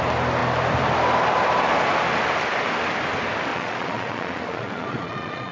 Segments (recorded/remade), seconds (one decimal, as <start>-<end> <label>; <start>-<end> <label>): 0.0-3.5 recorded; 3.5-5.5 remade